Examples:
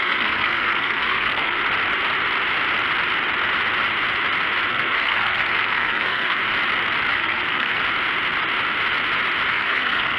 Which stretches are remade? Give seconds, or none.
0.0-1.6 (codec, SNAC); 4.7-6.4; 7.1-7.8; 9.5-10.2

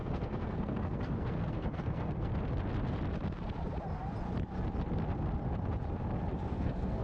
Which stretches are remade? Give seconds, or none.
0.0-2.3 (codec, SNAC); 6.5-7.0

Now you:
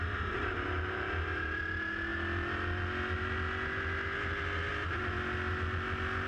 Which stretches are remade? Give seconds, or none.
none

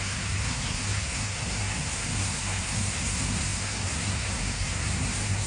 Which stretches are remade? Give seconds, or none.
0.0-5.5 (codec, SNAC)

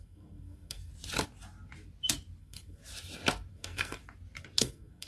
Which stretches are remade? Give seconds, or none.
0.0-0.9 (codec, SNAC); 2.4-2.8; 3.5-4.0; 4.6-5.1